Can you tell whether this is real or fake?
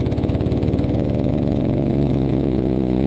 fake